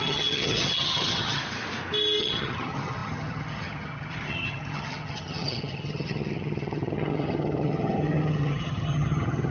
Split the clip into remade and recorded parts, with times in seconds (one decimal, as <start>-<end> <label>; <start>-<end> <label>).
0.0-1.4 remade; 1.4-2.2 recorded; 2.2-9.5 remade

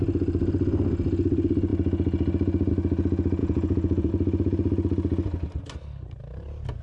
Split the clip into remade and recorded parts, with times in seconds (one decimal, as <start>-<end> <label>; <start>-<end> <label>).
0.0-3.4 recorded; 3.4-4.1 remade; 4.1-6.8 recorded

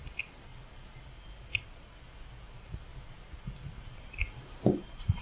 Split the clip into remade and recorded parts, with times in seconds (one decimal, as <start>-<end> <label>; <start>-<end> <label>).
0.0-0.5 remade; 0.5-2.5 recorded; 2.5-2.9 remade; 2.9-4.5 recorded; 4.5-5.2 remade

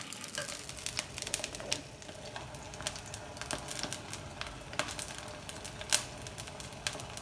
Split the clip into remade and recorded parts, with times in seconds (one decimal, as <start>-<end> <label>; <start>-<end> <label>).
0.0-7.2 recorded